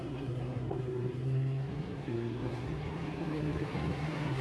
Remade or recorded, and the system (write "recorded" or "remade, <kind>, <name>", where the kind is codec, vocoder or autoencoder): remade, codec, SNAC